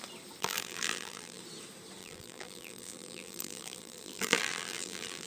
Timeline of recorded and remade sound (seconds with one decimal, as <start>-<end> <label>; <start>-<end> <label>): 0.0-0.4 recorded; 0.4-1.4 remade; 1.4-2.0 recorded; 2.0-5.3 remade